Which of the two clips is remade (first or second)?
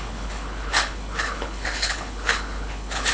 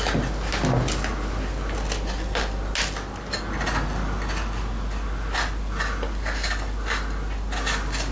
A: first